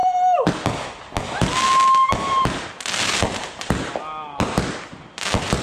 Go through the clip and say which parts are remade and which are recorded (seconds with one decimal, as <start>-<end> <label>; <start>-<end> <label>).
0.0-5.6 recorded